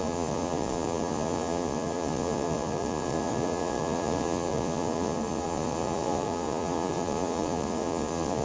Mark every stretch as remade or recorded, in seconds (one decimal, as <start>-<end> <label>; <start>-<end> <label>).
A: 0.0-8.4 remade